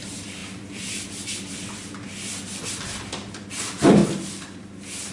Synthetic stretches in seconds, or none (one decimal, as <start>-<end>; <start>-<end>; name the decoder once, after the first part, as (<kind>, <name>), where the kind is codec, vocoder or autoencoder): 0.0-5.1 (vocoder, BigVGAN v2)